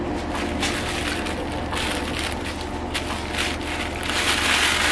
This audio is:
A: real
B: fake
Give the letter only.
A